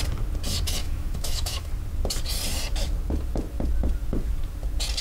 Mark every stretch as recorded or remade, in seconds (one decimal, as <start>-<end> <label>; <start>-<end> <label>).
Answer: 0.0-0.8 recorded; 0.8-1.7 remade; 1.7-5.0 recorded